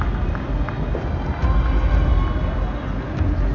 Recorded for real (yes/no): yes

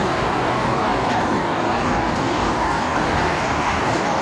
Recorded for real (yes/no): no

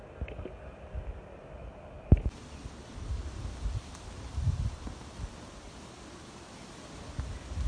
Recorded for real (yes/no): yes